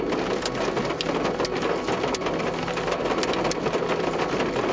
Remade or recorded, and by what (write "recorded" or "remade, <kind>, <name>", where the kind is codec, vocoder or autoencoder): recorded